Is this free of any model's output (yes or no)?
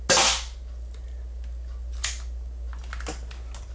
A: yes